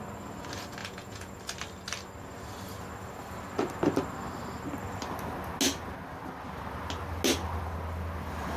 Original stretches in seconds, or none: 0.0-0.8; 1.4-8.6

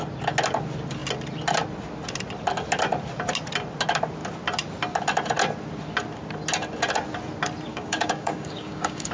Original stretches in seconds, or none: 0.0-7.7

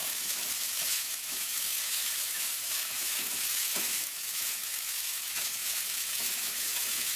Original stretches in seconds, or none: none

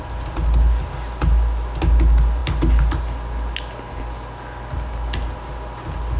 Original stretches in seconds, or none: 0.0-6.2

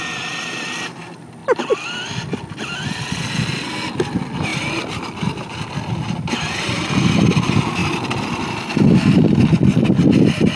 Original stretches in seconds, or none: 0.0-4.5; 5.4-7.8; 10.0-10.6

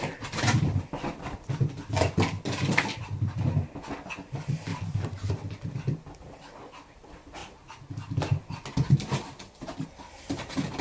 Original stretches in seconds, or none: 0.0-10.8